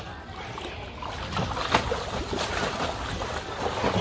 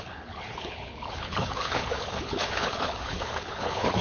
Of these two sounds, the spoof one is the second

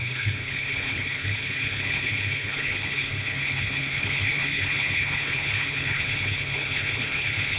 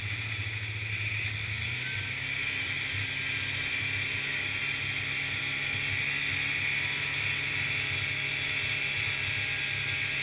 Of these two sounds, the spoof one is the first